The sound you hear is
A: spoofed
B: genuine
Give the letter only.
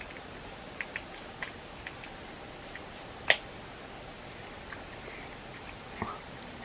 B